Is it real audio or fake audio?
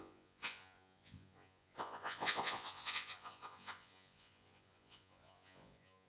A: fake